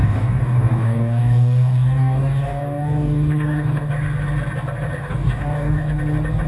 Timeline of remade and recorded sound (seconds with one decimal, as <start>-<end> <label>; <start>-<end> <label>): 0.0-3.9 remade; 3.9-5.0 recorded; 5.0-6.0 remade; 6.0-6.5 recorded

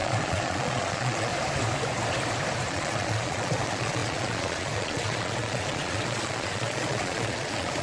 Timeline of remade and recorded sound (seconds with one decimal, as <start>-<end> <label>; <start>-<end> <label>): 0.0-1.3 remade; 1.3-2.7 recorded; 2.7-7.8 remade

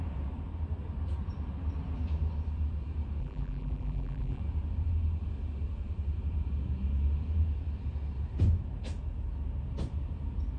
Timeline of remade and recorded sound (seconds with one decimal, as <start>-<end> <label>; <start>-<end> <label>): 0.0-3.2 recorded; 3.2-4.4 remade; 4.4-10.6 recorded

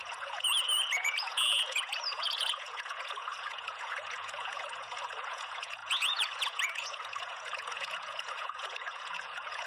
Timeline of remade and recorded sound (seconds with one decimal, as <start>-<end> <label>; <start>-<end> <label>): 0.0-9.7 remade